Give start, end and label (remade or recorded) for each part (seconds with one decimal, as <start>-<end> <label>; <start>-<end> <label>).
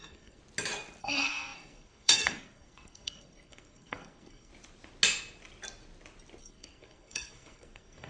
0.0-0.4 remade; 0.4-1.0 recorded; 1.0-4.5 remade; 4.5-6.4 recorded; 6.4-8.1 remade